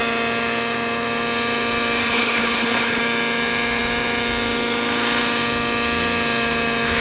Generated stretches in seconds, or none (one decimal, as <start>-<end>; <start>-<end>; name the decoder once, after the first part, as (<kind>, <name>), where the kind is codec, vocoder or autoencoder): 2.0-3.0 (codec, HILCodec)